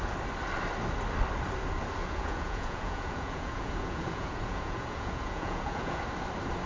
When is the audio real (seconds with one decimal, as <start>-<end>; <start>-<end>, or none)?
0.0-2.0; 6.0-6.7